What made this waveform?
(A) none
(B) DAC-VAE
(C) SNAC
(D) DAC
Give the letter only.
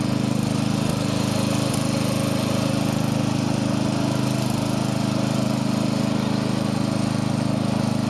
A